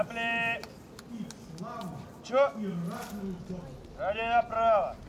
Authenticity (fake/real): real